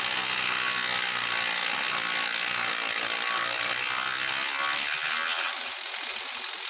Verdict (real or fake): real